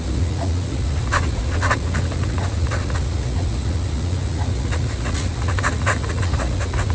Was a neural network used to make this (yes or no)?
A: yes